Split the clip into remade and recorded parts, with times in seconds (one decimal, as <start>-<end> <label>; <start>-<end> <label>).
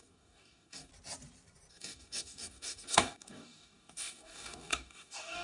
0.0-0.9 remade; 0.9-1.7 recorded; 1.7-5.4 remade